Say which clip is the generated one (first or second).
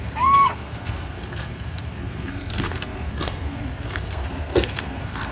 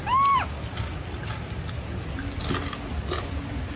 first